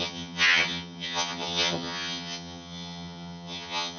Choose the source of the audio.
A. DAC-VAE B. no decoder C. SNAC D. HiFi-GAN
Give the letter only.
D